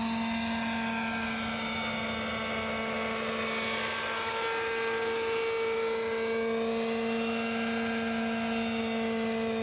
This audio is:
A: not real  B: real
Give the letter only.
B